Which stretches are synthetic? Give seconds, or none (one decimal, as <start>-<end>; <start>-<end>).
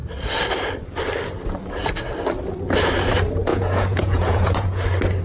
3.5-4.8